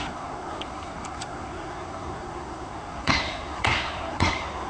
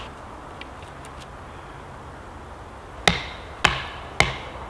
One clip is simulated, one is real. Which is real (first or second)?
second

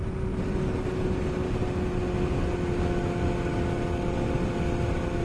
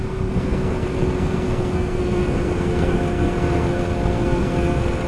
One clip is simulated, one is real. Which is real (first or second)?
first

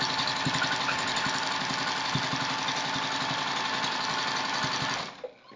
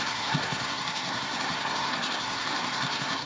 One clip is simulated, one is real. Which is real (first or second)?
first